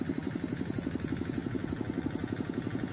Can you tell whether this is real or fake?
real